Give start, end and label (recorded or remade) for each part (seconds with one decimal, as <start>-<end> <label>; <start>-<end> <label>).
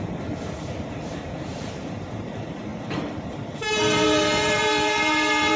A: 0.0-5.6 remade